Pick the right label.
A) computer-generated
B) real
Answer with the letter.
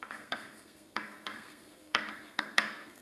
A